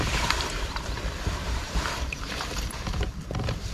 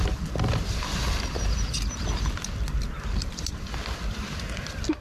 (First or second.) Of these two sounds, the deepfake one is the first